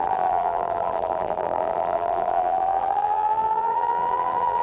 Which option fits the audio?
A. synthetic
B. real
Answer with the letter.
A